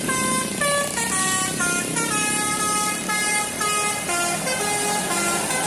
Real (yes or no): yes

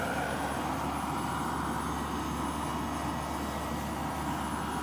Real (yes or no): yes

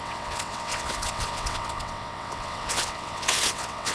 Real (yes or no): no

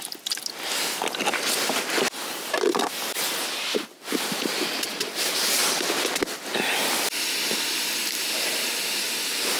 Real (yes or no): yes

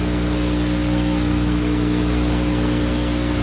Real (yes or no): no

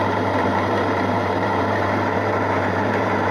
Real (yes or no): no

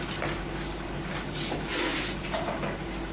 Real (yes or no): yes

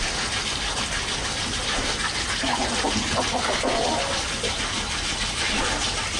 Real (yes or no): yes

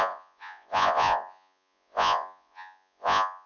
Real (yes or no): no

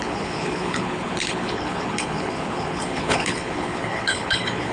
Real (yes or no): no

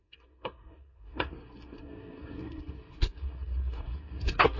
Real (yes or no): no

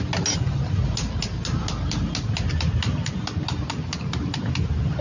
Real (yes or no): yes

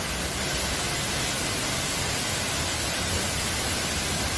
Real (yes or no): yes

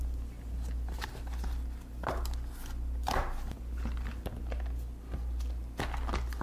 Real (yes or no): yes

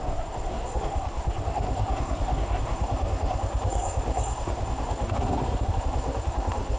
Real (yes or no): no